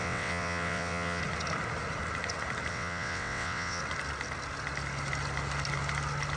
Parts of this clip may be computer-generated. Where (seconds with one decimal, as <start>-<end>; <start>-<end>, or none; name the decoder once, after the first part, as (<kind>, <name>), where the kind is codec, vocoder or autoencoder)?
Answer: 0.0-1.2 (vocoder, WaveNeXt); 2.7-3.8